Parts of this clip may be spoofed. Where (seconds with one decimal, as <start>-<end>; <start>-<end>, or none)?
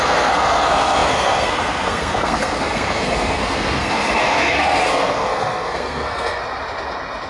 0.0-6.4